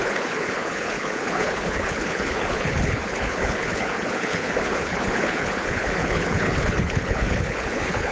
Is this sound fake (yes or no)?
yes